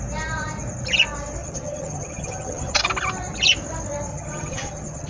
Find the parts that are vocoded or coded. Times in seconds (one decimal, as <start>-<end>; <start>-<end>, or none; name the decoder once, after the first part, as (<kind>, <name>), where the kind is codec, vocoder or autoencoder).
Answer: 1.4-2.8 (vocoder, HiFi-GAN); 4.1-5.1